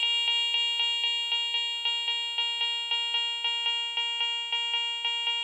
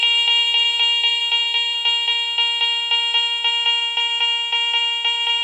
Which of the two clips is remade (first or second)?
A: second